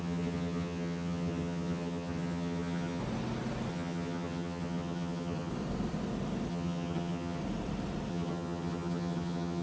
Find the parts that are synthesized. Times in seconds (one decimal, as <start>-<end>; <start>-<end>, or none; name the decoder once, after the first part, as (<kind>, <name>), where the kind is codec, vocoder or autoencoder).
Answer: 0.0-3.0 (vocoder, HiFi-GAN); 3.7-5.5; 6.5-7.4; 8.1-9.6